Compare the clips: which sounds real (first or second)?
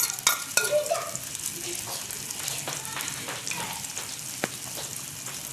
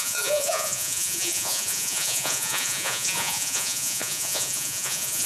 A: first